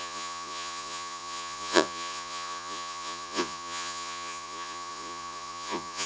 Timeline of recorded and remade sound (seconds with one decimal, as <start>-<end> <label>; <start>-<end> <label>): 0.0-6.1 remade